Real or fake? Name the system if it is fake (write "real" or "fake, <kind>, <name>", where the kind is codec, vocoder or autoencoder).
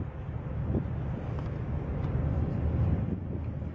real